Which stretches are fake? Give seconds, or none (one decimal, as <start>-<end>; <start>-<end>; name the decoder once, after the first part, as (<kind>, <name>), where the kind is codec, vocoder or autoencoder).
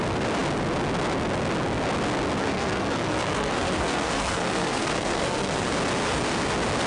2.4-5.7 (codec, SNAC)